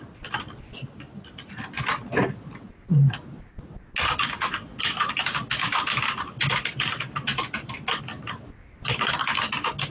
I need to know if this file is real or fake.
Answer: real